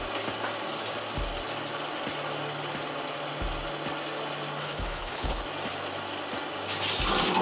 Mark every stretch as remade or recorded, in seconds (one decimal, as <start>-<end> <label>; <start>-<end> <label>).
0.0-4.6 recorded; 4.6-5.4 remade; 5.4-7.4 recorded

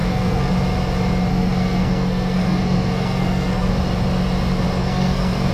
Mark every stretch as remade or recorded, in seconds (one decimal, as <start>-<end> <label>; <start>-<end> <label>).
0.0-0.5 remade; 0.5-1.3 recorded; 1.3-3.7 remade; 3.7-4.8 recorded; 4.8-5.5 remade

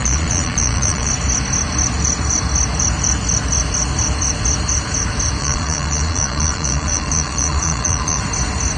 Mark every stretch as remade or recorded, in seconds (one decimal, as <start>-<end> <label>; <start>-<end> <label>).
0.0-1.1 remade; 1.1-5.4 recorded; 5.4-8.2 remade; 8.2-8.8 recorded

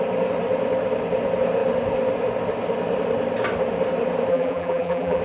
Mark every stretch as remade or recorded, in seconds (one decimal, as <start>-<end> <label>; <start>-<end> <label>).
0.0-4.3 recorded; 4.3-5.2 remade

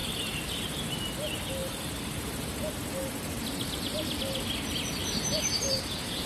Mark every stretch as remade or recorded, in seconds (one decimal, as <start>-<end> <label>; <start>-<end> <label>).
0.0-1.6 recorded; 1.6-4.2 remade; 4.2-5.0 recorded; 5.0-6.3 remade